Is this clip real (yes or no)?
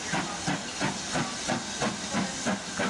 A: yes